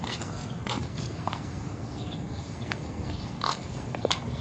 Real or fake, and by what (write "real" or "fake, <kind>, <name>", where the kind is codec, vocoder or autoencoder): fake, codec, SNAC